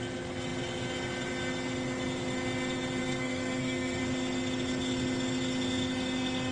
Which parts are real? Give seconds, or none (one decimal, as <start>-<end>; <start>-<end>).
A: 0.0-3.0; 4.0-6.5